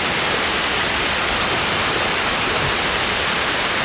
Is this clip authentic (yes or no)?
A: yes